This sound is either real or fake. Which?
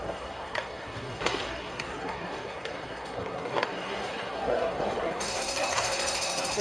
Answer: fake